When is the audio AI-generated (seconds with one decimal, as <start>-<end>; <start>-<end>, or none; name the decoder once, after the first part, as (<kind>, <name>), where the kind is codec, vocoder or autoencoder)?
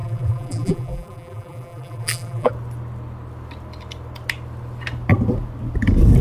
0.0-2.5 (vocoder, BigVGAN v2)